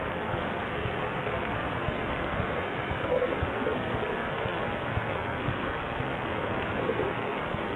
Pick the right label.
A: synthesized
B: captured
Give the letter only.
A